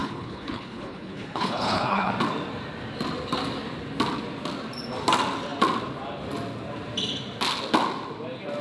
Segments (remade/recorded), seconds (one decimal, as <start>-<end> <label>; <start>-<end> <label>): 0.0-2.1 remade; 2.1-8.6 recorded